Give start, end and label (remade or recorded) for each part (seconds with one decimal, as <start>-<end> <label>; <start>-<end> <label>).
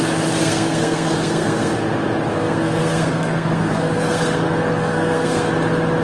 0.0-0.4 recorded; 0.4-1.7 remade; 1.7-2.3 recorded; 2.3-5.5 remade; 5.5-6.0 recorded